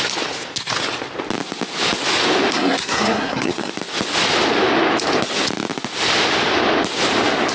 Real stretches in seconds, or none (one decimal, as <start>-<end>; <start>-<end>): 0.0-2.5; 3.7-7.5